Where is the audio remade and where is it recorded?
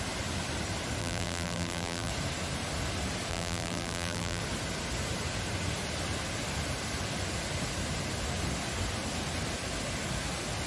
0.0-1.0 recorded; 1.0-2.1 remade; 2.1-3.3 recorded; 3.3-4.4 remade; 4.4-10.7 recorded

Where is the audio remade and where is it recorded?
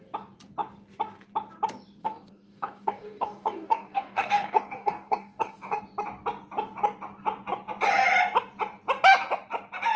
0.0-2.0 recorded; 2.0-5.8 remade; 5.8-10.0 recorded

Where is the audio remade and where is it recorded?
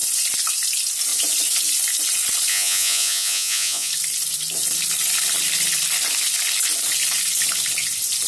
0.0-2.5 recorded; 2.5-3.9 remade; 3.9-8.3 recorded